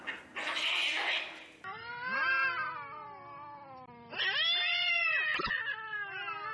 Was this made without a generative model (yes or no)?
yes